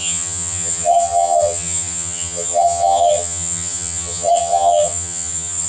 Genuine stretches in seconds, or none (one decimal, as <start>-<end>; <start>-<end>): none